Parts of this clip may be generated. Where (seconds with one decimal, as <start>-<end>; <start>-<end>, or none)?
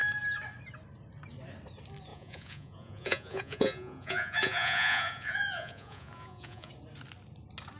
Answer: 2.1-6.7